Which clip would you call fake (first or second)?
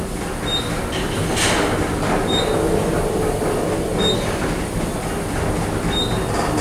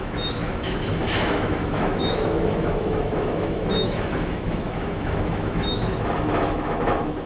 second